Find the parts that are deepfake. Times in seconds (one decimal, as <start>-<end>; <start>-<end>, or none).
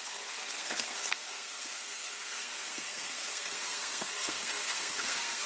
0.0-5.5